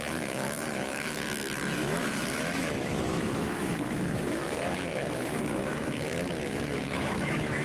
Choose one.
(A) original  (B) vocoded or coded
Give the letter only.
B